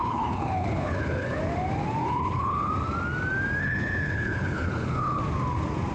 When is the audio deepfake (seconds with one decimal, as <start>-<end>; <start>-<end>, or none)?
0.0-1.4; 2.0-2.7; 3.6-5.2